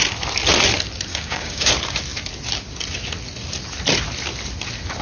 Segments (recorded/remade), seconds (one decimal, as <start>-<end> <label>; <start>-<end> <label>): 0.0-1.1 recorded; 1.1-1.7 remade; 1.7-5.0 recorded